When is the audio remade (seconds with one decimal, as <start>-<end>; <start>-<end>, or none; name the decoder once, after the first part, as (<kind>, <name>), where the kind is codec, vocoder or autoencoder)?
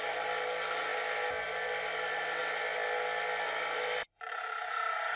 none